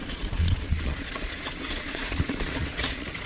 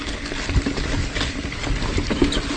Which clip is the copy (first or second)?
first